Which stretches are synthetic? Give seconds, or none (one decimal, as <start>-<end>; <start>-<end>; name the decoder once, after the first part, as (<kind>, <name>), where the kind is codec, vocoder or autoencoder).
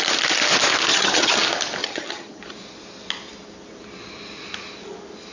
0.9-1.4 (vocoder, HiFi-GAN); 1.8-2.4